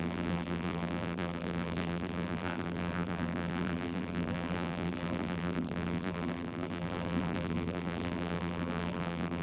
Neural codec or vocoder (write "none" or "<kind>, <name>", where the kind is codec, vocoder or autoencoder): vocoder, BigVGAN v2